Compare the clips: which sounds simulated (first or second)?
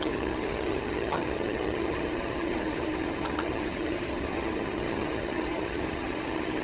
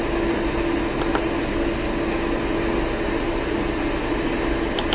first